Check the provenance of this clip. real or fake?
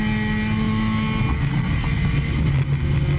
real